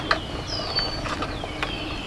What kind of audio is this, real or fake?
real